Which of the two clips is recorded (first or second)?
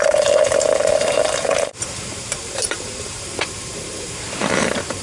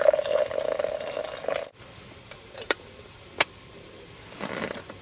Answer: second